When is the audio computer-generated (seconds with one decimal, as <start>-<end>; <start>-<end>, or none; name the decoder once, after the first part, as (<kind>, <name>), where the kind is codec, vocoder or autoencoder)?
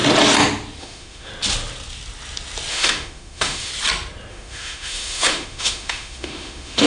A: 0.8-1.3 (autoencoder, DAC-VAE); 2.7-3.7; 4.3-6.9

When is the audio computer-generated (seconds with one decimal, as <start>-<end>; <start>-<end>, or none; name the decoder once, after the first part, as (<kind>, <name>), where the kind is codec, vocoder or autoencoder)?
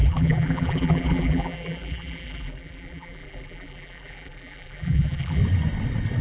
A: 0.0-5.4 (vocoder, BigVGAN v2)